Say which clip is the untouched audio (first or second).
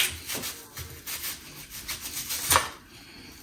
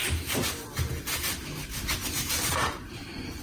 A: first